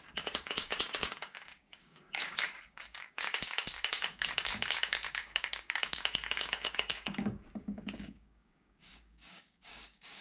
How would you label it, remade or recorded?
remade